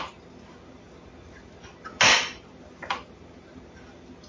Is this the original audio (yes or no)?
yes